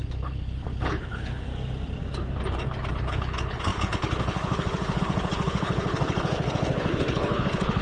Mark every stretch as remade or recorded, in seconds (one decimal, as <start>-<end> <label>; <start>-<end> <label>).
0.0-1.5 remade; 1.5-2.9 recorded; 2.9-7.8 remade